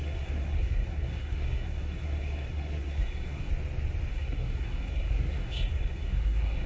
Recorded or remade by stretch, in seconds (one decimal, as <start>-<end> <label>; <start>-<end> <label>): 0.0-3.5 remade; 3.5-4.1 recorded; 4.1-6.7 remade